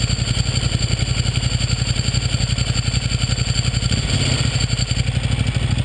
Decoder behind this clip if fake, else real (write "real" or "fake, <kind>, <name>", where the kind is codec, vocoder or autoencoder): real